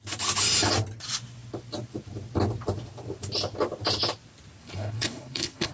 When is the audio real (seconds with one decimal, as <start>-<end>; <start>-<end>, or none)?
0.0-4.6